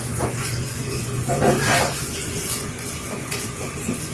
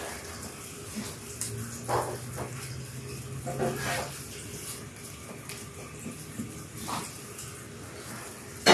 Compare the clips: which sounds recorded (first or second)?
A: second